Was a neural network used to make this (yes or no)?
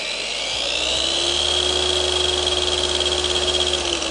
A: no